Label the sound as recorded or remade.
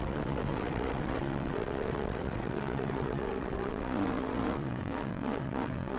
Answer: remade